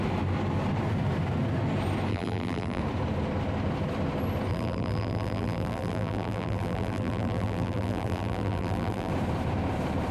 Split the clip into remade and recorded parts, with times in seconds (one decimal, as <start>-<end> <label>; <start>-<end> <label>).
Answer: 0.0-2.1 recorded; 2.1-2.8 remade; 2.8-4.5 recorded; 4.5-9.1 remade; 9.1-10.1 recorded